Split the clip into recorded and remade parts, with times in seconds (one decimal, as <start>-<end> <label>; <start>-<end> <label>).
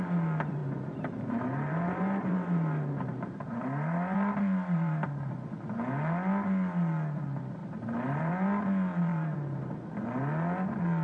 0.0-0.6 recorded; 0.6-5.3 remade; 5.3-7.6 recorded; 7.6-8.3 remade; 8.3-9.1 recorded; 9.1-9.9 remade; 9.9-11.0 recorded